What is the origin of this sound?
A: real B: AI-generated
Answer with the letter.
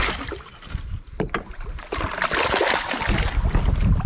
A